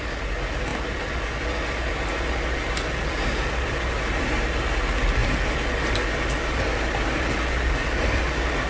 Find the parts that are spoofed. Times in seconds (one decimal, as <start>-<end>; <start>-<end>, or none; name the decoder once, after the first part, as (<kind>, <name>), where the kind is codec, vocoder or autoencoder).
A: none